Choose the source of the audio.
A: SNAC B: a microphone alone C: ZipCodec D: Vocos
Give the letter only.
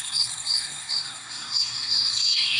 A